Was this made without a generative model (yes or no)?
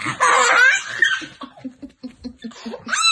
yes